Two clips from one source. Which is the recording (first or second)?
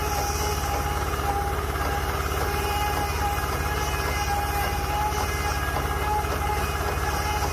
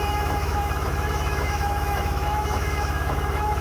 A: first